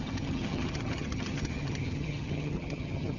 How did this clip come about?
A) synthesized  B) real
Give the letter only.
A